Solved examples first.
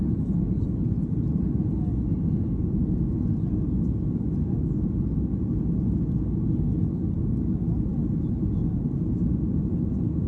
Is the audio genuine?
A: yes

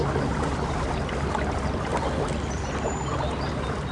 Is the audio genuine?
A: yes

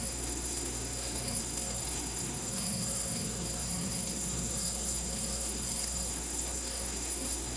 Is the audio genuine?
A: no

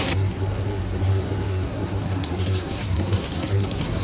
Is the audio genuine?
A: no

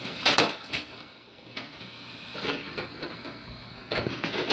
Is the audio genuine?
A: no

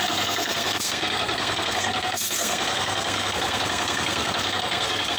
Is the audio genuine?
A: no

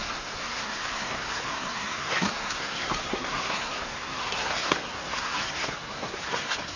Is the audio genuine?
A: no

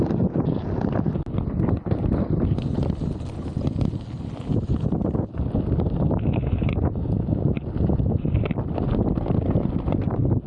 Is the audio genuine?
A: yes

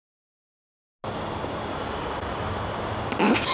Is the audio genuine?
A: yes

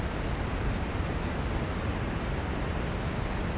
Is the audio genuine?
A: yes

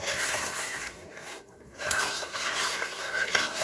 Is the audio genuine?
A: no